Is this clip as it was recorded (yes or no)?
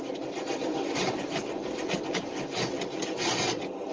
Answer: yes